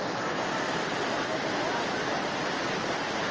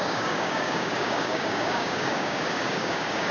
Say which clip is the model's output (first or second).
second